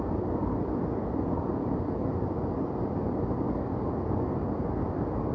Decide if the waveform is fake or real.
real